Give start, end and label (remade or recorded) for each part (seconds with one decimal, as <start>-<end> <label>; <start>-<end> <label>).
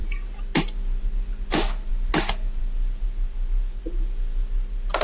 0.0-5.0 recorded